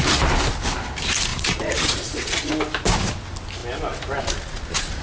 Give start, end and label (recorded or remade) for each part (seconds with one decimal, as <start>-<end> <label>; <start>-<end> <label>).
0.0-1.3 recorded; 1.3-2.5 remade; 2.5-5.0 recorded